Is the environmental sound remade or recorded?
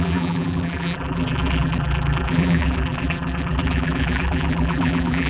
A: remade